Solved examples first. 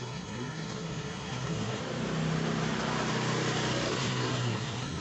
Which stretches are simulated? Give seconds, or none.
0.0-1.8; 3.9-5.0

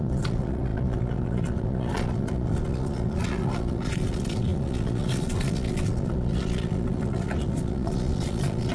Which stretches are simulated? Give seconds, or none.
0.0-8.7

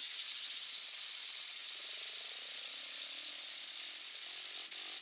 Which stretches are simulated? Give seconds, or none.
1.6-3.3

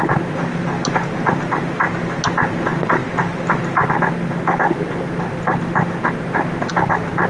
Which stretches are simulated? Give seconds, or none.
none

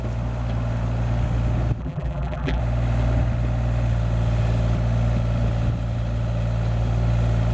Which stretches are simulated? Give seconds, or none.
1.8-2.6